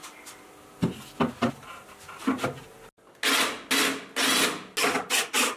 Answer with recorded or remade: recorded